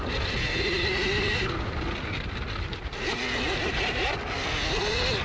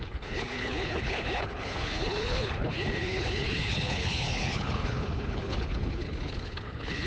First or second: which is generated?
second